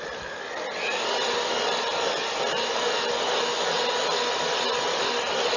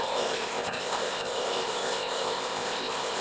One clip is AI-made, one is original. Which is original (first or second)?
first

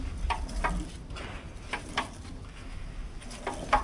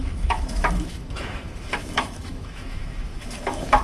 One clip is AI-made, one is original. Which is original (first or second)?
first